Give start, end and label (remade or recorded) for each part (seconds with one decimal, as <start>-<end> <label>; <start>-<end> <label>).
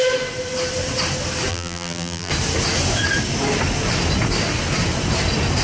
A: 0.0-1.5 recorded; 1.5-2.3 remade; 2.3-5.6 recorded